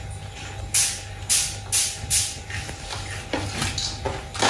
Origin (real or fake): real